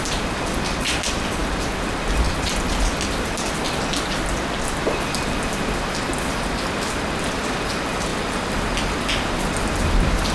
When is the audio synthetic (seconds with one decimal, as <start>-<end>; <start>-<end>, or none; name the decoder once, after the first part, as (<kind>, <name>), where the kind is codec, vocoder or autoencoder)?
none